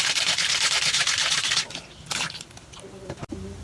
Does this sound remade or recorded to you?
recorded